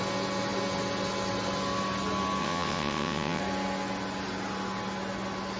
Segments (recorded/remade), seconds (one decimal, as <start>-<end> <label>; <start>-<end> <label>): 0.0-2.4 recorded; 2.4-3.4 remade; 3.4-5.6 recorded